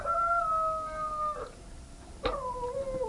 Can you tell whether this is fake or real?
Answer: real